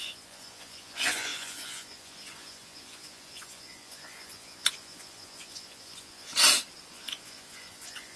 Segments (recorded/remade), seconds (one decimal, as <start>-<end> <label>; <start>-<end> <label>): 0.0-6.3 remade; 6.3-6.9 recorded; 6.9-8.2 remade